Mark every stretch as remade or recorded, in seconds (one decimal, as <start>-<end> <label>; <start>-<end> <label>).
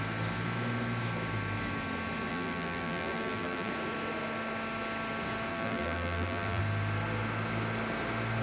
0.0-2.3 recorded; 2.3-3.7 remade; 3.7-5.5 recorded; 5.5-6.6 remade; 6.6-8.4 recorded